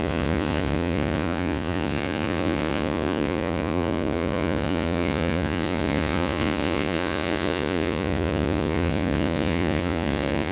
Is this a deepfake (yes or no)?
yes